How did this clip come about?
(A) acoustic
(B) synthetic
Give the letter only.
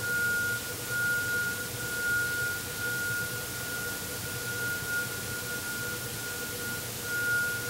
A